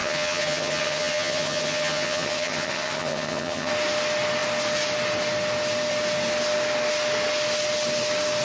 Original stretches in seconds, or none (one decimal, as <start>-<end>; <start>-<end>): 3.7-8.4